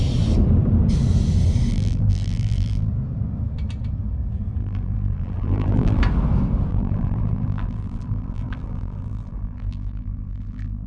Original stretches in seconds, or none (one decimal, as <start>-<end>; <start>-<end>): 0.0-1.7; 2.9-4.6; 6.0-6.7